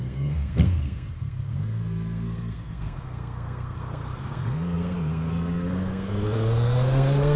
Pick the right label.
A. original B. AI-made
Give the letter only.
B